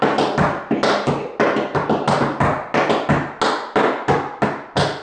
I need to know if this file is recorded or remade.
recorded